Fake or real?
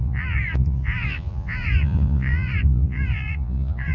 fake